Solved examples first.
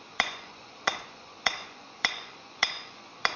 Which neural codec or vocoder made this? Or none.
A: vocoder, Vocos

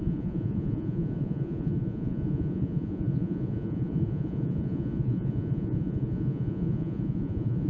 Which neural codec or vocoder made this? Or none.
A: vocoder, Vocos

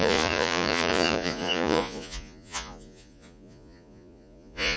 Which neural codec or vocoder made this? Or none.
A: vocoder, Vocos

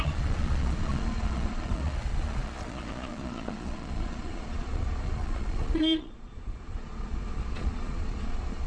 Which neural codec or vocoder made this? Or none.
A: vocoder, Vocos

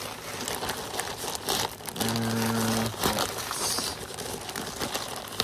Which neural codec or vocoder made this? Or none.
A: none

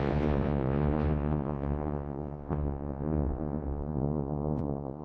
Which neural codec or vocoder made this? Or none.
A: vocoder, Vocos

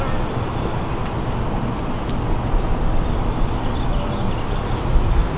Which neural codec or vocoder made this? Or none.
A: none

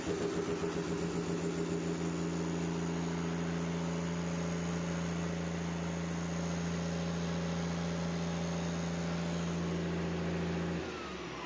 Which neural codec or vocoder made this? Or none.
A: none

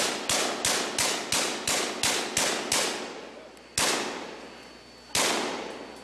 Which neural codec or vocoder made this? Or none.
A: none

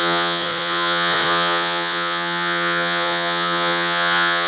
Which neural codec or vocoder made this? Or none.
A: vocoder, Vocos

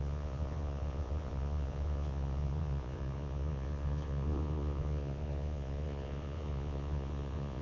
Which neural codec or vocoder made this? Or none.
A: vocoder, Vocos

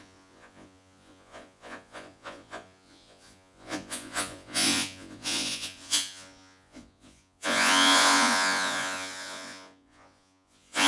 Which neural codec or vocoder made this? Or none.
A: vocoder, Vocos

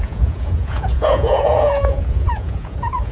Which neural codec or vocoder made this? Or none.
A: vocoder, Vocos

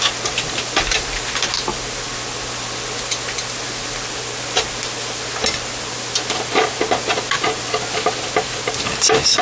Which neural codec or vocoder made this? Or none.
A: none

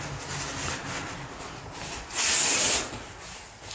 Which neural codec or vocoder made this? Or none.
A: none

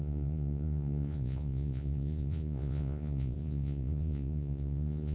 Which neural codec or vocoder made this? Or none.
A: vocoder, Vocos